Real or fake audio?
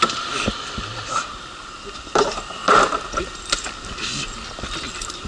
fake